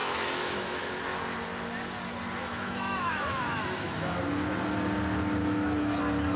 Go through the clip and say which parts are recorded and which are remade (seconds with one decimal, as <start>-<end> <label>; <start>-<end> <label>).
0.0-0.9 remade; 0.9-2.4 recorded; 2.4-4.2 remade; 4.2-5.4 recorded; 5.4-6.0 remade; 6.0-6.4 recorded